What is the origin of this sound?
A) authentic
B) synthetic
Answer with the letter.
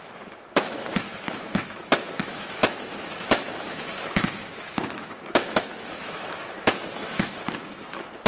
B